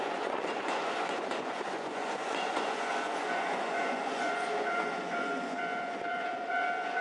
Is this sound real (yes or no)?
no